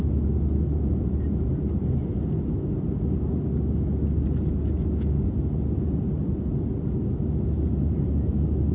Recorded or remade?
recorded